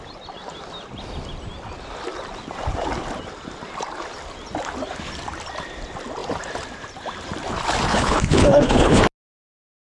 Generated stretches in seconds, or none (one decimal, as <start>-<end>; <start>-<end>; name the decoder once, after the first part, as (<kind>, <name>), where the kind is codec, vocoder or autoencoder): 7.9-9.0 (codec, HILCodec)